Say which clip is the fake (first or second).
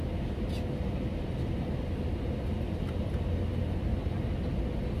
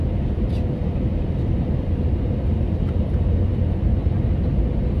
second